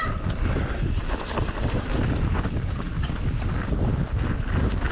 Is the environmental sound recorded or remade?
recorded